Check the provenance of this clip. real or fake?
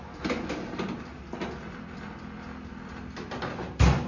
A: real